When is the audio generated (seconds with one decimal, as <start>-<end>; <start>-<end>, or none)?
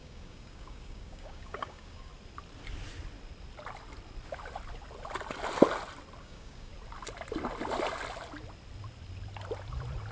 0.0-2.1; 6.2-6.7